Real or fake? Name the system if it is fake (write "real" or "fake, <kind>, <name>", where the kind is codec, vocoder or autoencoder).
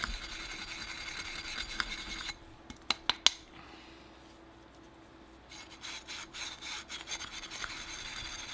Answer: real